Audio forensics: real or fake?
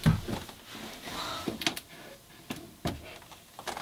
real